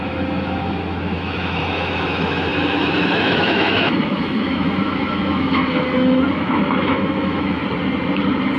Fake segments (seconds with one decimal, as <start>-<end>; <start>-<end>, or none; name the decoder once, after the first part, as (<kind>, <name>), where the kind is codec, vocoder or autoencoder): 0.0-7.6 (autoencoder, DAC-VAE)